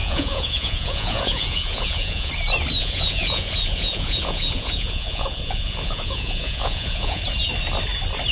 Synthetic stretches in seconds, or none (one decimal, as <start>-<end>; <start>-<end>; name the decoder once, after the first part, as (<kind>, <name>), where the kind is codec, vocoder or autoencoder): 0.0-2.3 (vocoder, Vocos); 2.8-7.2

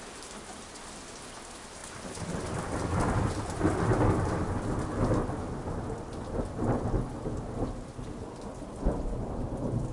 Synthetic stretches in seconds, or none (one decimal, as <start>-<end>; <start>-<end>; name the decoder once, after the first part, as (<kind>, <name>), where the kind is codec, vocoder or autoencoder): none